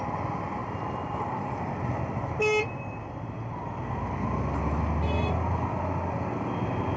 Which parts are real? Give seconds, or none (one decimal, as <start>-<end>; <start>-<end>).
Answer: 0.0-7.0